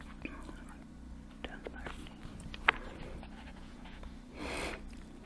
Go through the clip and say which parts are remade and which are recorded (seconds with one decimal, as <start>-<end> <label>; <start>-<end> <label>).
0.0-3.5 recorded; 3.5-4.0 remade; 4.0-5.3 recorded